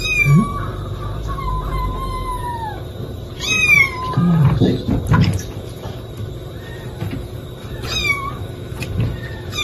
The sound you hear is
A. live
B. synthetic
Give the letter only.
B